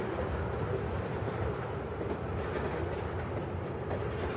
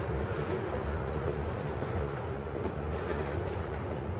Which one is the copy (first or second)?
second